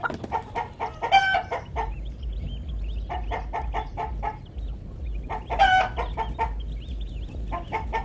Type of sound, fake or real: real